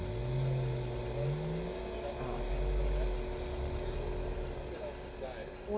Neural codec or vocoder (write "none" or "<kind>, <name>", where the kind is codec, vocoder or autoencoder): none